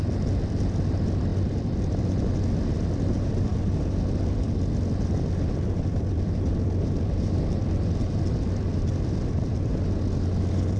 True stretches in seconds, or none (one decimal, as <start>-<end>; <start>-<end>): 9.7-10.4